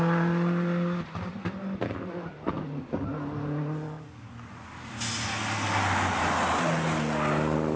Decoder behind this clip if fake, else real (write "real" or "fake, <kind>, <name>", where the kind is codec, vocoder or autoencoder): real